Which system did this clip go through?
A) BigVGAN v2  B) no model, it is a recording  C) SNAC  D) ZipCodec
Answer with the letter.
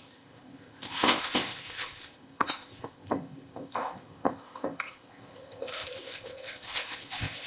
D